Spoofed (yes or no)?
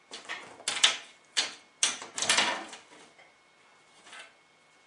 no